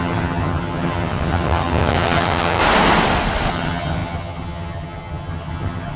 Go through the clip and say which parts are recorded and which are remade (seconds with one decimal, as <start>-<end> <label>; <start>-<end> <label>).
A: 0.0-2.6 remade; 2.6-3.5 recorded; 3.5-6.0 remade

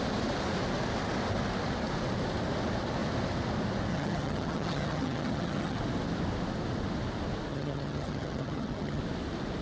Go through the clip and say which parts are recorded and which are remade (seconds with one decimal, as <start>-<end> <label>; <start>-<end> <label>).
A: 0.0-3.9 recorded; 3.9-5.8 remade; 5.8-7.5 recorded; 7.5-9.0 remade; 9.0-9.6 recorded

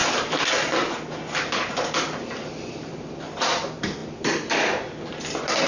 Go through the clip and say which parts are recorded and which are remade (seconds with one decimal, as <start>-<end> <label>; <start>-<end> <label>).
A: 0.0-5.7 recorded

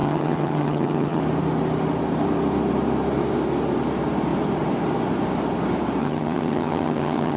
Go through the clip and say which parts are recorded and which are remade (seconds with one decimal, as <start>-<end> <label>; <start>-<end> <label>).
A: 0.0-1.2 remade; 1.2-6.0 recorded; 6.0-7.4 remade